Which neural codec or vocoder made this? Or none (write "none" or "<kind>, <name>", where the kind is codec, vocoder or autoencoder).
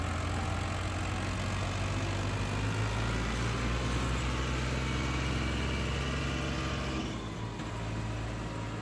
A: none